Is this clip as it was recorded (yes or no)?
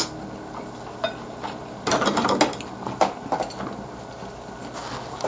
yes